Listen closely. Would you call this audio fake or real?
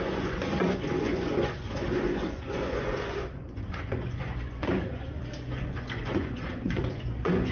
fake